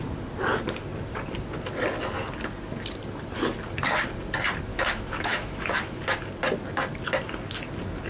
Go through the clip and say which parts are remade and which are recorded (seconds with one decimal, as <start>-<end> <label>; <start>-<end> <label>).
0.0-4.7 recorded; 4.7-6.0 remade; 6.0-8.1 recorded